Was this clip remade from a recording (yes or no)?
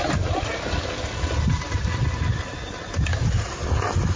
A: no